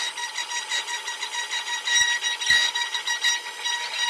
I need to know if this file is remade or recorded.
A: recorded